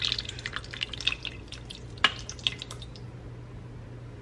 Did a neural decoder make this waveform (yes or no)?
no